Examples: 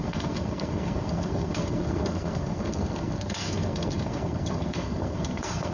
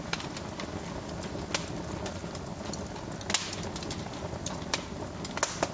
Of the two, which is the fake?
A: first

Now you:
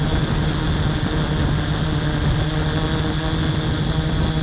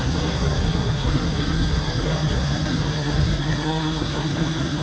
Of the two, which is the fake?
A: second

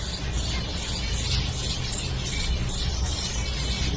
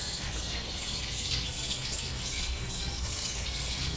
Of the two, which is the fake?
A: second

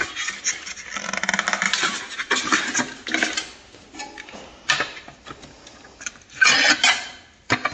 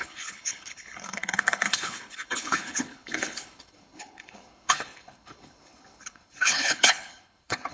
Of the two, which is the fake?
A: second